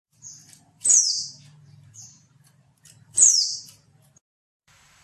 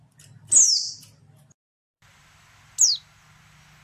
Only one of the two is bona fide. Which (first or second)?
second